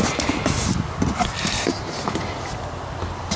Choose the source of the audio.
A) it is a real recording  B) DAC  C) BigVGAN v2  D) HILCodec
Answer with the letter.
A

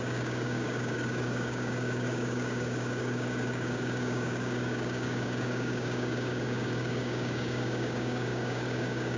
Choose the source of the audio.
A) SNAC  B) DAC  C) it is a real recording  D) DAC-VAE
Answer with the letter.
B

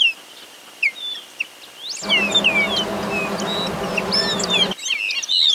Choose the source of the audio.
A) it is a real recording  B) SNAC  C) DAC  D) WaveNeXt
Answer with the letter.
A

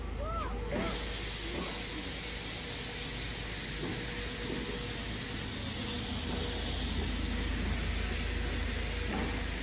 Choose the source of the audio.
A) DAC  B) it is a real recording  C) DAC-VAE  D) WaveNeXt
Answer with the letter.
B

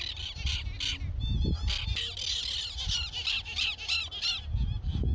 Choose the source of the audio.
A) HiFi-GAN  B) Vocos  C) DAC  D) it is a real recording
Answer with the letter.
D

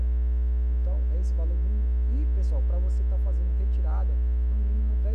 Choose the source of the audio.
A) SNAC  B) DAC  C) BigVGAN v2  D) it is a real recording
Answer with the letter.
D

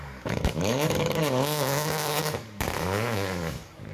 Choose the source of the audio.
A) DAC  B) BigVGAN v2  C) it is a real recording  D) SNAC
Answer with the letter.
A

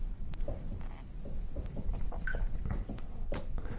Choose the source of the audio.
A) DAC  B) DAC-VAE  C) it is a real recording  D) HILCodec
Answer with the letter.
C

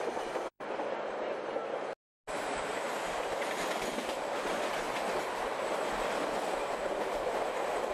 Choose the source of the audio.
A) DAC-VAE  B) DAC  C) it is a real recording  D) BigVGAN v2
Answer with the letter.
C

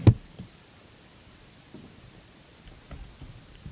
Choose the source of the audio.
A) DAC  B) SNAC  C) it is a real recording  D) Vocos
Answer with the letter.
C